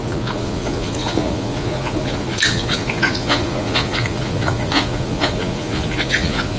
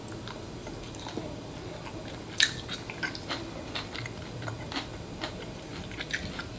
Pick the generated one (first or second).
first